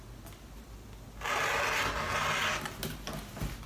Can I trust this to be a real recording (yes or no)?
yes